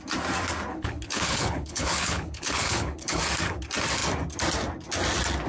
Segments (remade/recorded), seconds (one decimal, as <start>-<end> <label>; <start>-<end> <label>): 0.0-0.7 recorded; 0.7-3.2 remade; 3.2-5.5 recorded